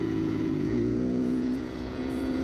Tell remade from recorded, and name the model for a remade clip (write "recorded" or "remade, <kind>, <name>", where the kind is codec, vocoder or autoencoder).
remade, vocoder, Vocos